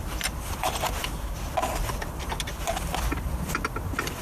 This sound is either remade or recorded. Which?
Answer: recorded